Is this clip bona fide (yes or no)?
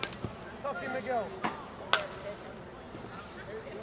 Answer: yes